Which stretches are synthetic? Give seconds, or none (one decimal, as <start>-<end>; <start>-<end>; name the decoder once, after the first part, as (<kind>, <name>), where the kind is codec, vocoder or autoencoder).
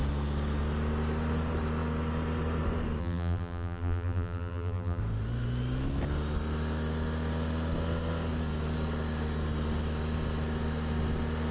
3.0-5.0 (vocoder, BigVGAN v2)